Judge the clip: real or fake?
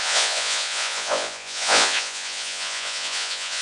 fake